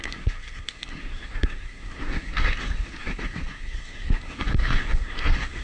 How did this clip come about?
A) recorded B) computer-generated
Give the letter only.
B